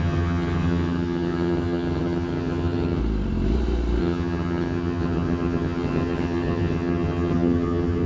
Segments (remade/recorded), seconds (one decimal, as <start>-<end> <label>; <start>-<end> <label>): 0.0-3.0 remade; 3.0-4.0 recorded; 4.0-8.1 remade